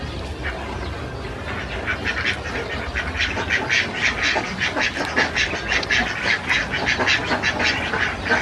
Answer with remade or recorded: recorded